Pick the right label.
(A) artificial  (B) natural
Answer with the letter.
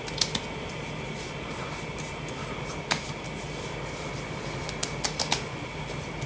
B